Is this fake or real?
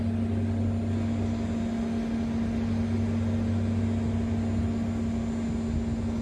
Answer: real